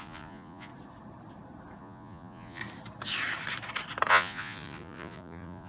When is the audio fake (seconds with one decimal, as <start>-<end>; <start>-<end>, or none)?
0.0-0.7; 1.8-2.6; 4.1-5.7